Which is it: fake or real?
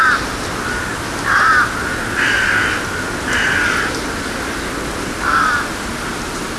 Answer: real